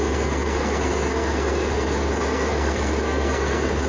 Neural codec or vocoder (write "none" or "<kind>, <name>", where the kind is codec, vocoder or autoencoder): codec, SNAC